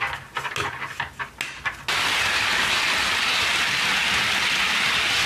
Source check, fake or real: real